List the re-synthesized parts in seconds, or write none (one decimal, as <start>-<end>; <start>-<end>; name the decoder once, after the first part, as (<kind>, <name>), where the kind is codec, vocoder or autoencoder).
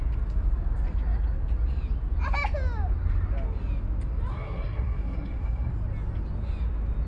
4.3-5.7 (codec, SNAC)